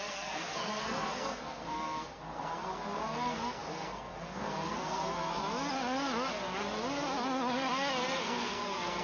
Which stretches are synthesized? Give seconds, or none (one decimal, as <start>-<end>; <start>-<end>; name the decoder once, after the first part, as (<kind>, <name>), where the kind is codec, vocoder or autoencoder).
0.0-5.4 (codec, SNAC); 8.2-9.0